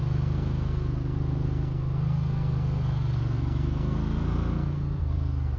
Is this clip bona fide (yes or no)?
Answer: no